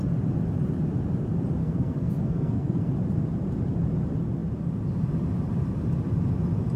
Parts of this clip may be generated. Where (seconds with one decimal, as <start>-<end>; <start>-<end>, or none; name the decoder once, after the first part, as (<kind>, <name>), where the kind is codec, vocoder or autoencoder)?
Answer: 1.6-2.9 (codec, SNAC)